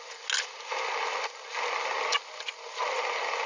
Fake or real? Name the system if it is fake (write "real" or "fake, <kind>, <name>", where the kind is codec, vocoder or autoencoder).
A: real